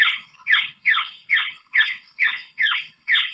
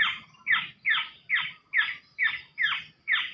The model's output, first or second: first